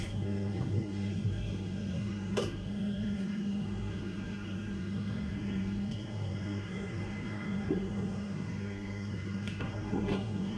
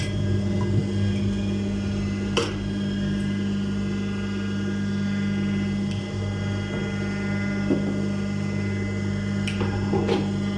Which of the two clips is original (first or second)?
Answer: second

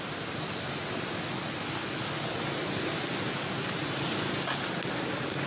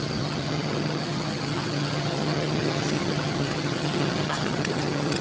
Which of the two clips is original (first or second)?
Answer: first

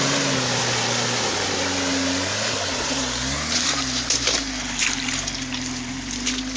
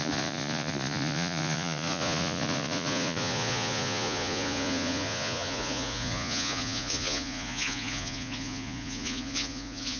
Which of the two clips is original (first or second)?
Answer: first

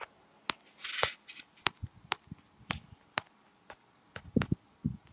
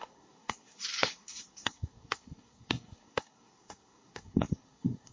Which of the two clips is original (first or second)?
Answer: first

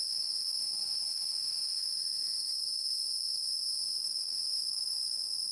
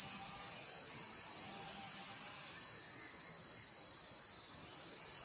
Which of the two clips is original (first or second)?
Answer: second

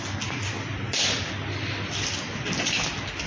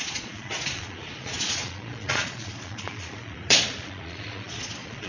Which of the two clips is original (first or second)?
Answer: first